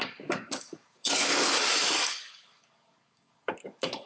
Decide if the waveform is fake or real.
fake